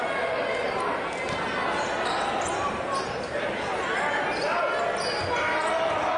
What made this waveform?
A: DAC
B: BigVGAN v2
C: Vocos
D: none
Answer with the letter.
D